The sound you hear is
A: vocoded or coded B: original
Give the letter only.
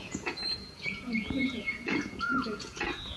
A